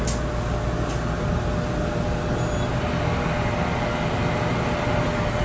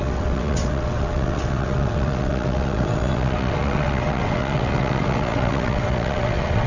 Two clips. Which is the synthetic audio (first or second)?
second